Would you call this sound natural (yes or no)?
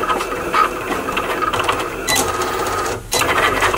no